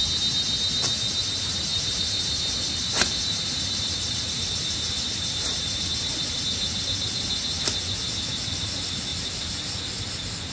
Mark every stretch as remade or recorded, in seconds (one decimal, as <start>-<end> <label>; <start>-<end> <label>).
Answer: 0.0-1.7 recorded; 1.7-6.4 remade; 6.4-10.5 recorded